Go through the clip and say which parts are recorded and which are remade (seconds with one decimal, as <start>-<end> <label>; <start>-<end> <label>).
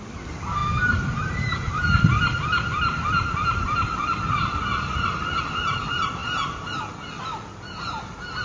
0.0-8.4 recorded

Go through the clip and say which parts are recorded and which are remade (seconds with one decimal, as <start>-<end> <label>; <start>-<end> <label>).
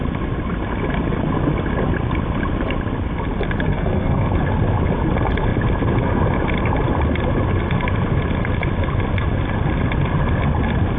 0.0-3.7 recorded; 3.7-4.3 remade; 4.3-11.0 recorded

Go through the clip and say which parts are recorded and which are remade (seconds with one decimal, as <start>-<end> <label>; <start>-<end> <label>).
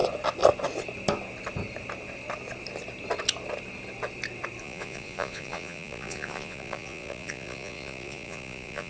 0.0-4.6 recorded; 4.6-8.9 remade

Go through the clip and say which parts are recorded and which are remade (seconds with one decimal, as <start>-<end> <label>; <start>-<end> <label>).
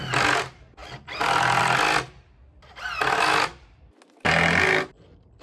0.0-0.8 recorded; 0.8-1.6 remade; 1.6-5.4 recorded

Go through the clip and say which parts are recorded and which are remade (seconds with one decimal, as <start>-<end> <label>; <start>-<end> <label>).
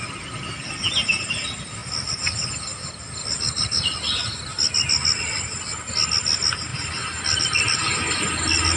0.0-8.8 recorded